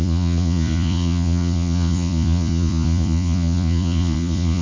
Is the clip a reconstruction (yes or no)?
yes